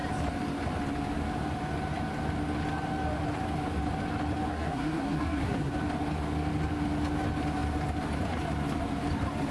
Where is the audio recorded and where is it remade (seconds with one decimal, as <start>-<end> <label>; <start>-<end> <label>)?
0.0-4.5 recorded; 4.5-5.7 remade; 5.7-9.5 recorded